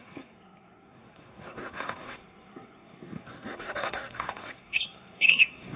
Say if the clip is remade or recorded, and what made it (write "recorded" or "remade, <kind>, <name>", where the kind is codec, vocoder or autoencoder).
remade, codec, SNAC